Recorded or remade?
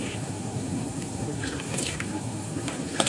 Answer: remade